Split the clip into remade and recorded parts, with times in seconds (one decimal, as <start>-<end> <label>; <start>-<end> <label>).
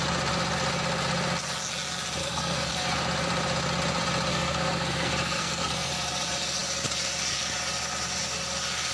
0.0-2.2 recorded; 2.2-2.7 remade; 2.7-4.3 recorded; 4.3-5.9 remade; 5.9-8.9 recorded